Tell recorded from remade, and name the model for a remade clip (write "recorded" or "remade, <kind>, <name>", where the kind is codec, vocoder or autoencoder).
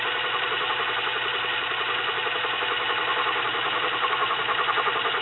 recorded